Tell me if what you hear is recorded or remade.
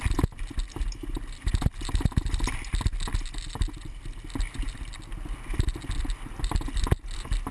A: recorded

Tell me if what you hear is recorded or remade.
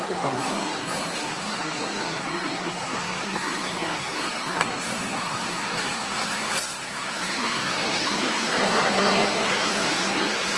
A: remade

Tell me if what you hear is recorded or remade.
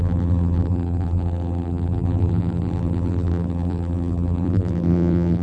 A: remade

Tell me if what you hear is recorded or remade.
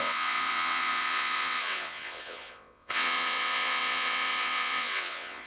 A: remade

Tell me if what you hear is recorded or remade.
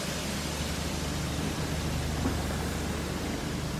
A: recorded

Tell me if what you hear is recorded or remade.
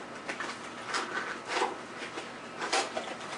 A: recorded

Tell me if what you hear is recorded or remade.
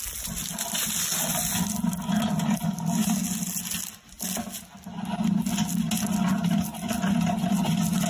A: recorded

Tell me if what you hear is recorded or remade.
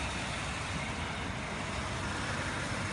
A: recorded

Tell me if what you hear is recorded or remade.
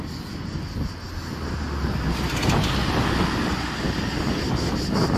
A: recorded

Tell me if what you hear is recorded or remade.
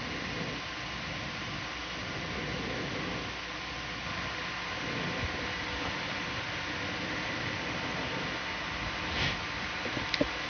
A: recorded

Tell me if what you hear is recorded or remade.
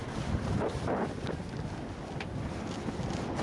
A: recorded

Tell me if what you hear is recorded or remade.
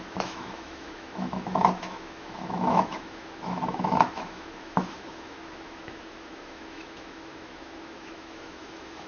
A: remade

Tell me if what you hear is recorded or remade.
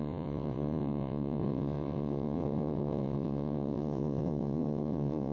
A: remade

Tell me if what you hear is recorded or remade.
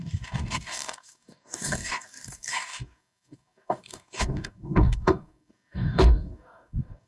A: remade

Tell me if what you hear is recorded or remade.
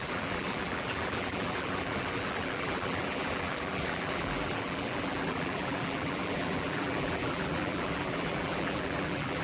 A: remade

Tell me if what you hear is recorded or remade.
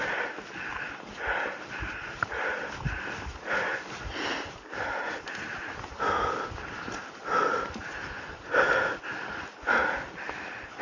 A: recorded